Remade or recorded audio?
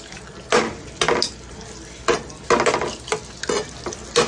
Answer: recorded